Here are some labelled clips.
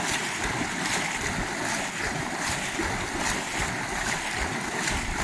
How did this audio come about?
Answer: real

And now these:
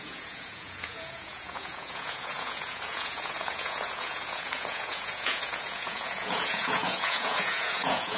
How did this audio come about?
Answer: fake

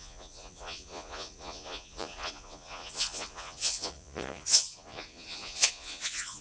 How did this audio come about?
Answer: fake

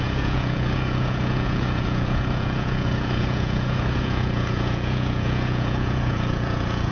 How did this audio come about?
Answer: fake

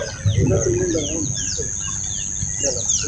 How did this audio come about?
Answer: real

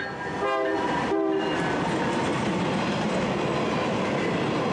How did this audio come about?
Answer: real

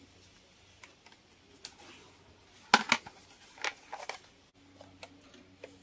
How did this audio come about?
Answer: real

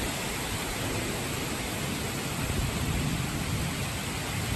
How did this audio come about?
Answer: real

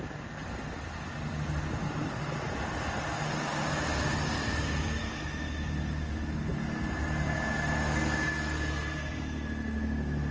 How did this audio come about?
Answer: real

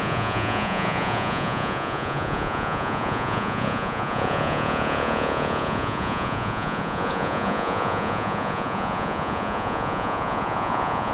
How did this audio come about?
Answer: fake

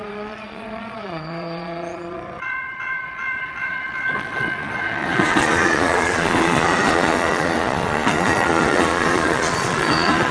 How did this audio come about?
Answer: fake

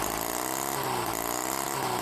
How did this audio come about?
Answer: real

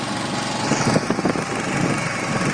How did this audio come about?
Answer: real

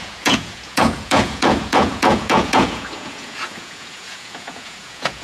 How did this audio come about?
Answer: fake